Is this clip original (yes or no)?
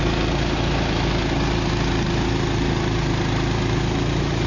yes